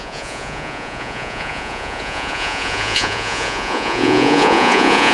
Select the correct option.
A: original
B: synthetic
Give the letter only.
B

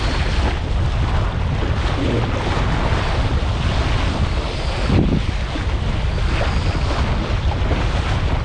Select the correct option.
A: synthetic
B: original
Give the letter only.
B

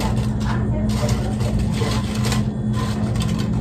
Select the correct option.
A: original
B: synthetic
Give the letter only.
A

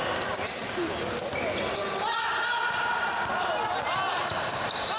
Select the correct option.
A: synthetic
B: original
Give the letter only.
B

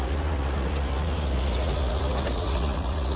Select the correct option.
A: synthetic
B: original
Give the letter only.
A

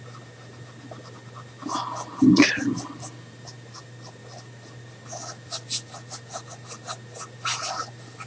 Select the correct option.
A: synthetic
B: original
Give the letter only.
B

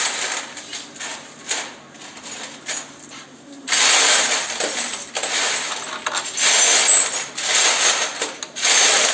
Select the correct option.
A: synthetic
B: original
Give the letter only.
B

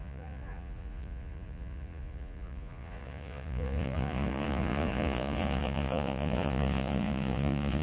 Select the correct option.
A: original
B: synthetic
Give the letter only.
B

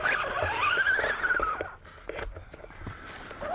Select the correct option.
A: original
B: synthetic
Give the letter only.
A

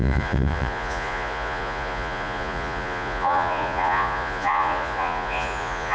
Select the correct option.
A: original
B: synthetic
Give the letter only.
B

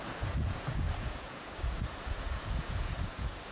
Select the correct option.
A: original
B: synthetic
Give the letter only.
B